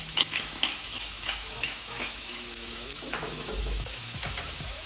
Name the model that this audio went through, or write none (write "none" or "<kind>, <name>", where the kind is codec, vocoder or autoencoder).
autoencoder, DAC-VAE